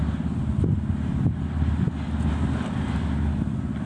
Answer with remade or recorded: recorded